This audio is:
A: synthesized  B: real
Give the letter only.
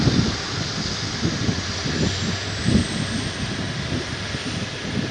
B